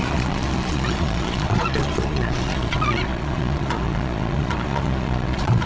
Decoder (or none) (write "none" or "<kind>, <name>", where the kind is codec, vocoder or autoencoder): vocoder, Vocos